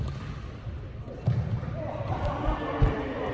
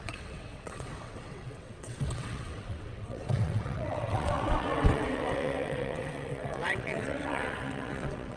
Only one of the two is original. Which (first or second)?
first